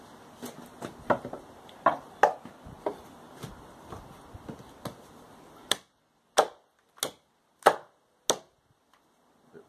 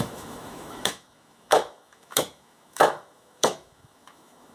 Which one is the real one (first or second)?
first